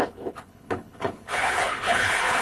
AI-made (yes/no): yes